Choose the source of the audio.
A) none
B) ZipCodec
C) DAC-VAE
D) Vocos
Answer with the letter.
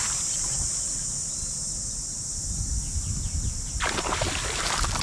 A